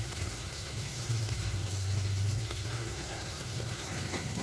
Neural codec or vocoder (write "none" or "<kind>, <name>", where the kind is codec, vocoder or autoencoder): codec, SNAC